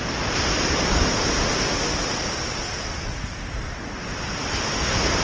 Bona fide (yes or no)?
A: yes